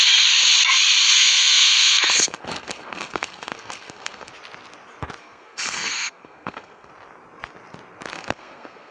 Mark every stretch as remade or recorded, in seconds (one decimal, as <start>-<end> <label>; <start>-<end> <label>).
0.0-1.2 recorded; 1.2-4.3 remade; 4.3-5.2 recorded; 5.2-6.9 remade; 6.9-8.1 recorded; 8.1-8.9 remade